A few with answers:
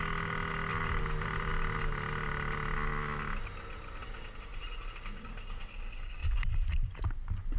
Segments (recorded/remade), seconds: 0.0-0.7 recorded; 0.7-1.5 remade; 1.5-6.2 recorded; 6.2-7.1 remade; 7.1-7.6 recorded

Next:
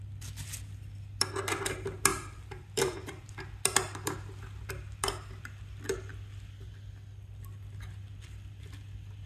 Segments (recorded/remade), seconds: 0.0-2.1 recorded; 2.1-3.3 remade; 3.3-9.3 recorded